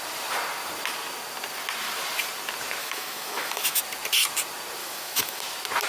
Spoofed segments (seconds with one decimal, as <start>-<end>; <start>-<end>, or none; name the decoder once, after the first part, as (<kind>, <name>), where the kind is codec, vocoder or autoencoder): 2.8-3.8 (autoencoder, DAC-VAE); 4.8-5.4